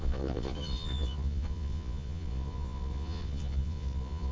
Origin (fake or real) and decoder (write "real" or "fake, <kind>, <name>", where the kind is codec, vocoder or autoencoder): fake, vocoder, Vocos